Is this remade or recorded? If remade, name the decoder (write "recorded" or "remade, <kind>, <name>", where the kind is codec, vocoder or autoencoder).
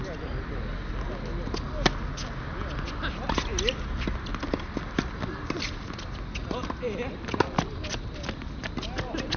recorded